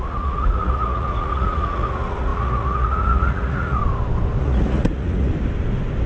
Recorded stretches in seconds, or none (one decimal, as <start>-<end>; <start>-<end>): 3.8-4.4; 5.3-6.1